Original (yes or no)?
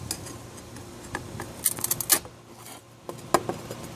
yes